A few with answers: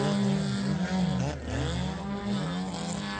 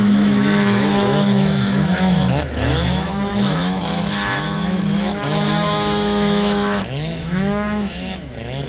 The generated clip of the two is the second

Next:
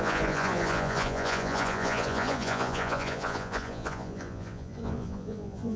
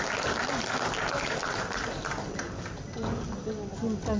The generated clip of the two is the first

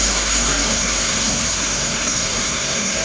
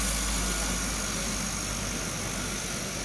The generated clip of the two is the first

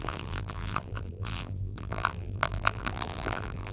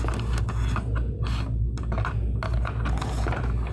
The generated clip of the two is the first